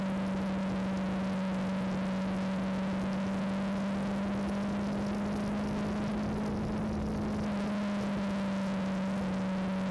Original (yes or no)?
yes